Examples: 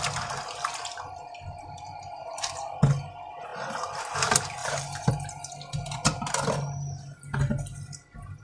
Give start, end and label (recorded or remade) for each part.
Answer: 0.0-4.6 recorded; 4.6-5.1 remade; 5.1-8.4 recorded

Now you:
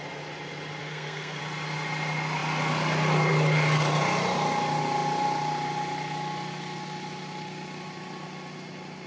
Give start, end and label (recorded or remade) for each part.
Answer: 0.0-0.8 recorded; 0.8-1.4 remade; 1.4-9.1 recorded

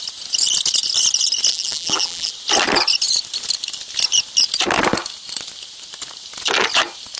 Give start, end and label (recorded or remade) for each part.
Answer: 0.0-1.5 recorded; 1.5-2.3 remade; 2.3-7.2 recorded

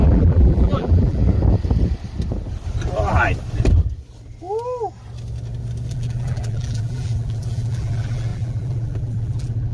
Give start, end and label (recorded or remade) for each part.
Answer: 0.0-1.2 remade; 1.2-5.9 recorded; 5.9-9.7 remade

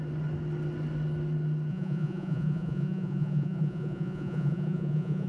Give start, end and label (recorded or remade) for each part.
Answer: 0.0-1.7 recorded; 1.7-5.3 remade

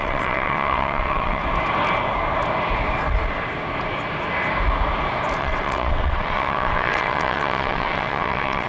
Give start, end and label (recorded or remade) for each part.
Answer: 0.0-1.4 remade; 1.4-5.4 recorded; 5.4-8.7 remade

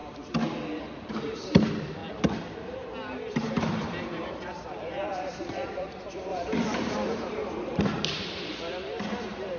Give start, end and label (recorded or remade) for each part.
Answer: 0.0-1.1 recorded; 1.1-2.0 remade; 2.0-3.5 recorded; 3.5-9.6 remade

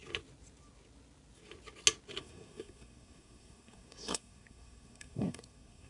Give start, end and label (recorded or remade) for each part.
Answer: 0.0-2.2 recorded; 2.2-5.9 remade